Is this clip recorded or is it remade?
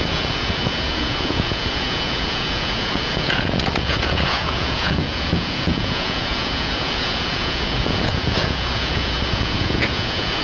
remade